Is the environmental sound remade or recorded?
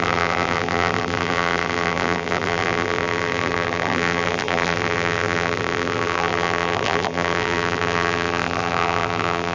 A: remade